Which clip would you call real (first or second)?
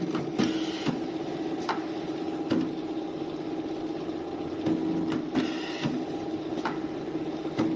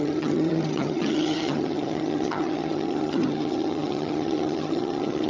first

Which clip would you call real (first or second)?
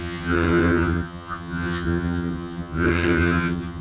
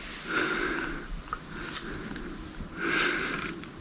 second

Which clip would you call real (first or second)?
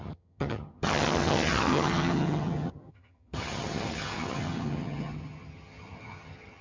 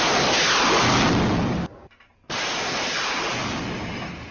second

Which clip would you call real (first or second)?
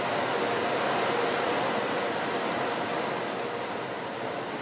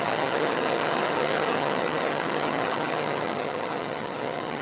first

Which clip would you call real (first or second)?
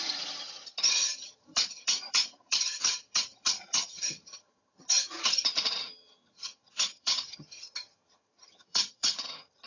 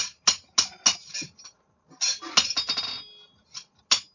second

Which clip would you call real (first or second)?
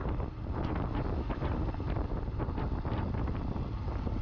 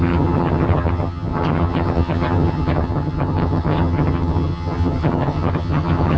first